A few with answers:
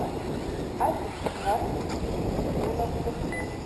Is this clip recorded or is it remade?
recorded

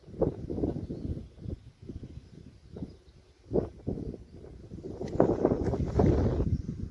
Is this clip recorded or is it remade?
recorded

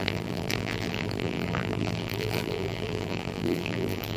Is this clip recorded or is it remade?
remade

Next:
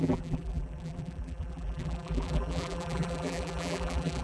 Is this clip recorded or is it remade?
remade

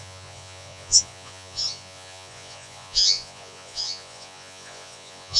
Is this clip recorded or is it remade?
remade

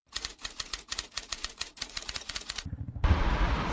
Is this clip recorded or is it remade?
remade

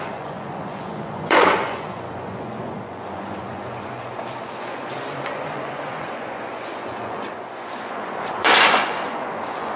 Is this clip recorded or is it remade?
remade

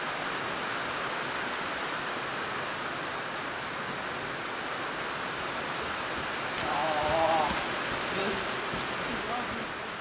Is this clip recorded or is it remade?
recorded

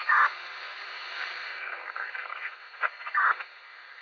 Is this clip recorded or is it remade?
remade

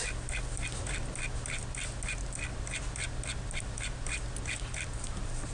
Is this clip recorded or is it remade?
recorded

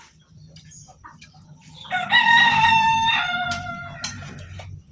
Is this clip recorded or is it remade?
remade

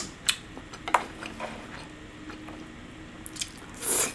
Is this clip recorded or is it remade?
recorded